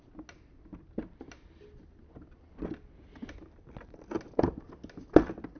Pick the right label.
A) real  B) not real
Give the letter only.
A